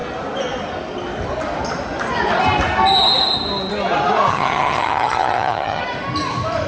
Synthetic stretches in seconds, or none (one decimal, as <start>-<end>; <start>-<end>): 4.3-5.8